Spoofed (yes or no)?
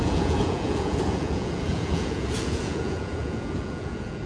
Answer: yes